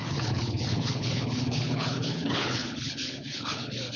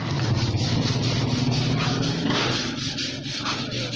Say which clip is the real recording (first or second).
second